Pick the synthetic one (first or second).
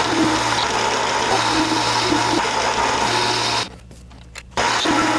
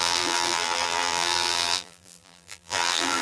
second